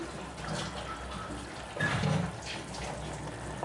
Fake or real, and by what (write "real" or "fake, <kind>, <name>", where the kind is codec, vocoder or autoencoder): real